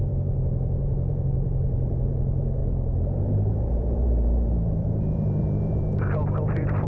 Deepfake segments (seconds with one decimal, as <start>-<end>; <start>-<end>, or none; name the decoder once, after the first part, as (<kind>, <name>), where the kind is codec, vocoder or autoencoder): 0.0-6.9 (vocoder, BigVGAN v2)